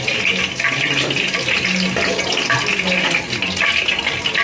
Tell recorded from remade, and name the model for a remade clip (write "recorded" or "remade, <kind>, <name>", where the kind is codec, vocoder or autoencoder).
recorded